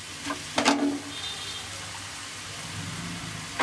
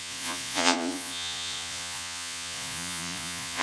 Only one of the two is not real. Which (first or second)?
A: second